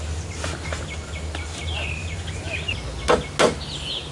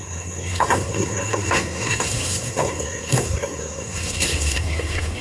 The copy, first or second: second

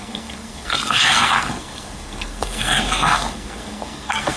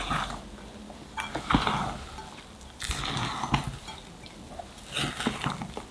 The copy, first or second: first